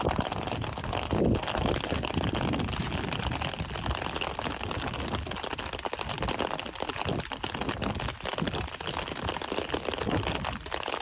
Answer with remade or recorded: recorded